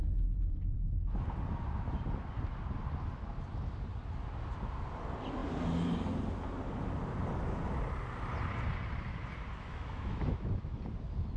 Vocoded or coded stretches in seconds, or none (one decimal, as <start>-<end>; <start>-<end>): 9.5-10.8